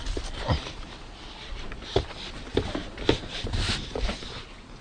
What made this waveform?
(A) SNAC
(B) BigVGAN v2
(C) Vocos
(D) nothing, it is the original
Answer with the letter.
D